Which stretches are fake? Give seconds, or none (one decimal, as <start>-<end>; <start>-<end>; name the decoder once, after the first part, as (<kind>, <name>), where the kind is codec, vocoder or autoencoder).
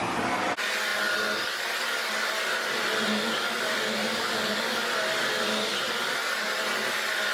4.1-4.8 (codec, DAC)